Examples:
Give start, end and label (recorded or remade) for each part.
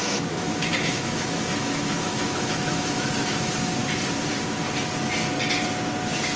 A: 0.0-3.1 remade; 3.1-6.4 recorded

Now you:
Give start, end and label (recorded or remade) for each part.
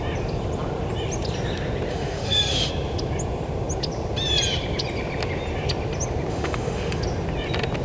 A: 0.0-1.9 recorded; 1.9-2.7 remade; 2.7-6.3 recorded; 6.3-7.0 remade; 7.0-7.8 recorded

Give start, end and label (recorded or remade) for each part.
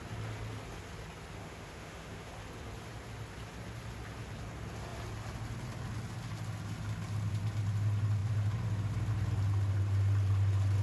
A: 0.0-1.4 recorded; 1.4-2.3 remade; 2.3-10.8 recorded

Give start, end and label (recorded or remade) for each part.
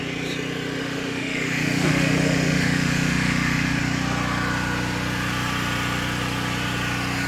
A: 0.0-0.8 recorded; 0.8-3.8 remade; 3.8-7.3 recorded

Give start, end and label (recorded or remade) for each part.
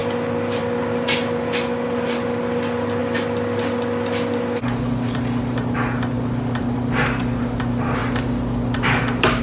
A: 0.0-9.4 recorded